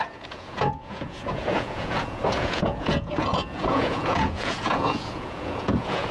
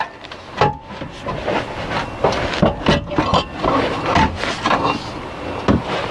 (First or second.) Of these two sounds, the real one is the second